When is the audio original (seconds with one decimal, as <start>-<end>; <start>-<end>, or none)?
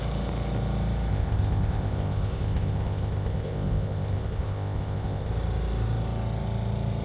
0.0-1.1; 5.3-7.0